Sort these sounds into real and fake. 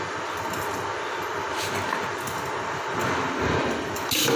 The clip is real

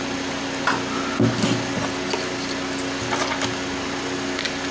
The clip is real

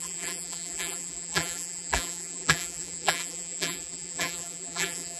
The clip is fake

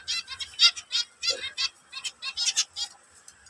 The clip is real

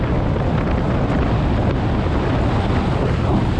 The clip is real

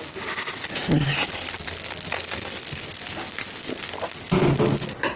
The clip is real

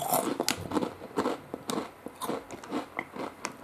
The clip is real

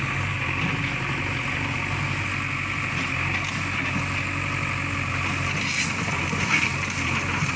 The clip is real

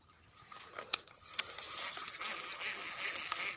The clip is real